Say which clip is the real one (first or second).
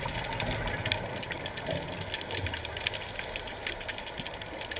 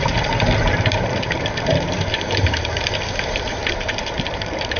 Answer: first